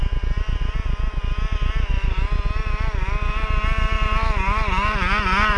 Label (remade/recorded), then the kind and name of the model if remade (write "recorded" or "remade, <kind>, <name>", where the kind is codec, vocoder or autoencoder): recorded